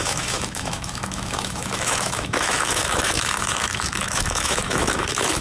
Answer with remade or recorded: remade